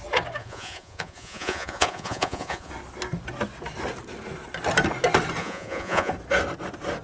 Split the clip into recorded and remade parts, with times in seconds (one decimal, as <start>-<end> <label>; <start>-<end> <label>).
0.0-0.4 recorded; 0.4-2.7 remade; 2.7-5.4 recorded; 5.4-6.1 remade; 6.1-7.0 recorded